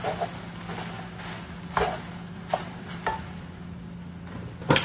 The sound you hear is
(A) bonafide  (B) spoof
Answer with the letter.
A